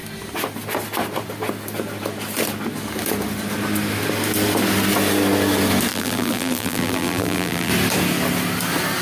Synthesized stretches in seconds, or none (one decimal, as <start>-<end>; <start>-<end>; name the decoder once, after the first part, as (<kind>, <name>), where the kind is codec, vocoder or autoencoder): 5.9-7.7 (vocoder, BigVGAN v2)